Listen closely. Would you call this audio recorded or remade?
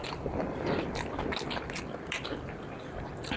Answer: recorded